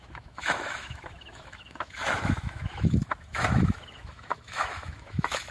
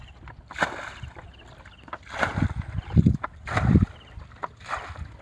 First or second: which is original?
second